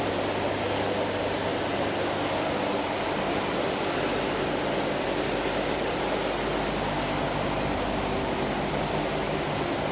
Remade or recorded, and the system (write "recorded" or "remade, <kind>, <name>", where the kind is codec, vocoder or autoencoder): recorded